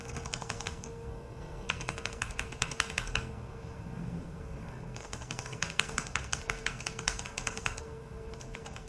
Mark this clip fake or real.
fake